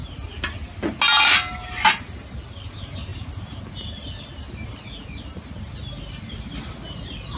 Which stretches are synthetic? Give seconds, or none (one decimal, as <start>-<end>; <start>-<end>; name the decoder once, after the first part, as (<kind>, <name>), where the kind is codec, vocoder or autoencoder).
3.1-3.6 (vocoder, BigVGAN v2)